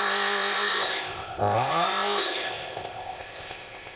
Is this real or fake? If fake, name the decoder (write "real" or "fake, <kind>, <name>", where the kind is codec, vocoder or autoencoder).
fake, codec, ZipCodec